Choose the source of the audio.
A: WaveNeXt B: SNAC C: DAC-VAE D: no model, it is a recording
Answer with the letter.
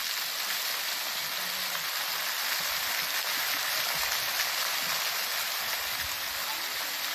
D